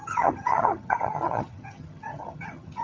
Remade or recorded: remade